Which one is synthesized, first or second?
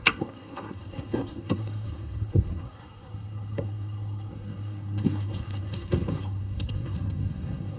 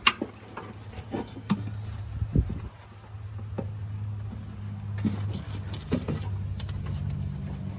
first